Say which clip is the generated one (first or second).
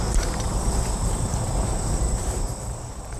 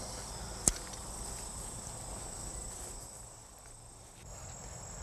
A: first